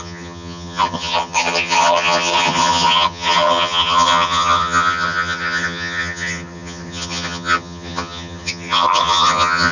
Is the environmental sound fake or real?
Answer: fake